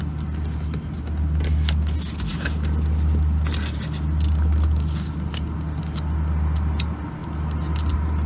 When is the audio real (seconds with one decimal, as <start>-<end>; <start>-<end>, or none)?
0.0-8.3